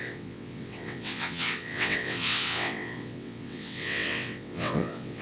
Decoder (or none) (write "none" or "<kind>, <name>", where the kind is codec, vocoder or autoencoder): vocoder, WaveNeXt